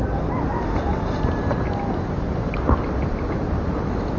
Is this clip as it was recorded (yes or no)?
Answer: yes